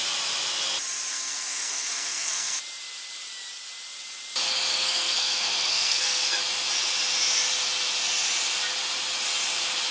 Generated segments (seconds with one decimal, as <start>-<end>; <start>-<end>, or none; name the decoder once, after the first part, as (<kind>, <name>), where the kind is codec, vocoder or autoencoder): 1.1-2.6 (codec, SNAC); 4.7-6.4